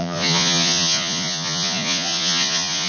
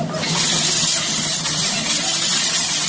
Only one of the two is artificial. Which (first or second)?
first